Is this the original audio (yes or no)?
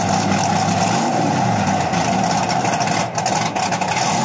yes